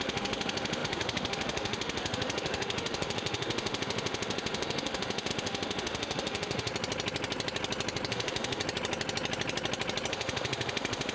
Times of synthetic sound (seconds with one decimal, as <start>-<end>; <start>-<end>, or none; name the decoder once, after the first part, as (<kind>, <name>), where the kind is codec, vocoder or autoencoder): 0.0-6.7 (autoencoder, DAC-VAE); 8.1-8.6; 10.1-11.1